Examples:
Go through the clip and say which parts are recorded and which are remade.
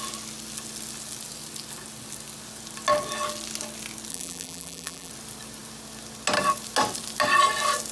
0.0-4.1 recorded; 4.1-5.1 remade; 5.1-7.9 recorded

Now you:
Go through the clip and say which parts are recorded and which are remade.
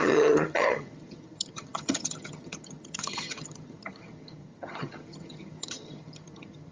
0.0-6.7 remade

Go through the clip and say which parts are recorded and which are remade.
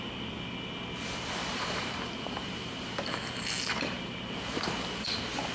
0.0-1.4 recorded; 1.4-4.7 remade; 4.7-5.5 recorded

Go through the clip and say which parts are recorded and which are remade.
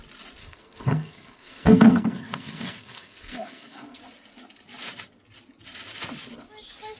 0.0-0.4 recorded; 0.4-4.0 remade; 4.0-7.0 recorded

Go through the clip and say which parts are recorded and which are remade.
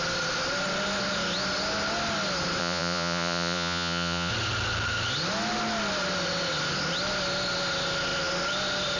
0.0-2.6 recorded; 2.6-4.3 remade; 4.3-9.0 recorded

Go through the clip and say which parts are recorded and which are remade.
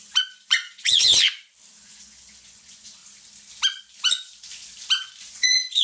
0.0-1.1 remade; 1.1-1.7 recorded; 1.7-3.0 remade; 3.0-5.2 recorded; 5.2-5.8 remade